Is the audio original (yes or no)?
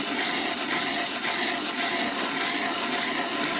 yes